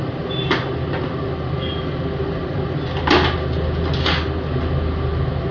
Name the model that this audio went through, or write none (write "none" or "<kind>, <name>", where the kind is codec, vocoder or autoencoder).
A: none